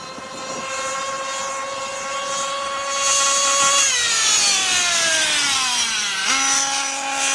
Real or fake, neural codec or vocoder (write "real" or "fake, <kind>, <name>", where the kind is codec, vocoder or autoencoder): real